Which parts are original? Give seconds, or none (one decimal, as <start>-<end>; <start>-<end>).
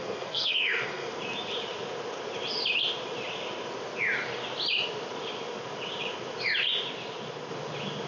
1.1-8.1